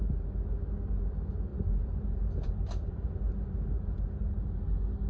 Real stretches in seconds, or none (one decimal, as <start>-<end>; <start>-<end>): 0.0-1.5; 4.6-5.1